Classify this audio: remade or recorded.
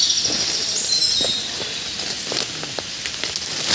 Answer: recorded